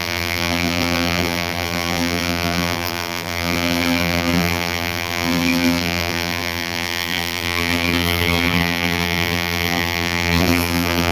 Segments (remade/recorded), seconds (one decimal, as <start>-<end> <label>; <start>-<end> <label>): 0.0-11.1 remade